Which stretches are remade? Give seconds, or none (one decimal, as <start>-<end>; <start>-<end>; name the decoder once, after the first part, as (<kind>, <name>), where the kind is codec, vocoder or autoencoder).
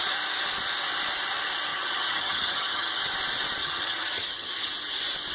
1.7-3.0 (vocoder, HiFi-GAN); 3.6-4.7